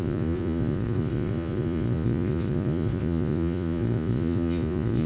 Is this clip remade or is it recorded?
remade